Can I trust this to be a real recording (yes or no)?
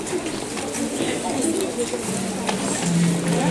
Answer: yes